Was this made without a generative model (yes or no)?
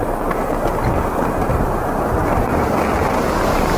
yes